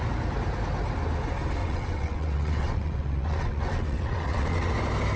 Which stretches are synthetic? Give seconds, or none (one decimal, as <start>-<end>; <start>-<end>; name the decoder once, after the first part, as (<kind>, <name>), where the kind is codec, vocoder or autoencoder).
1.6-4.7 (vocoder, WaveNeXt)